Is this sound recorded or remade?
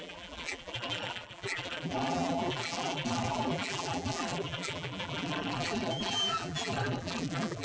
remade